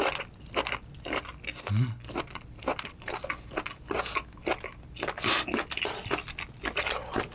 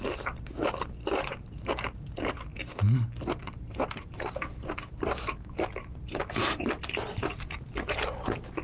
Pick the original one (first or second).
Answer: first